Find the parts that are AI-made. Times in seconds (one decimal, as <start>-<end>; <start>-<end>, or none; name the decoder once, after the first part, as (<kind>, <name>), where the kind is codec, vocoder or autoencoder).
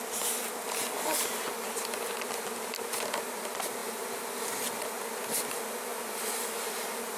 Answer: none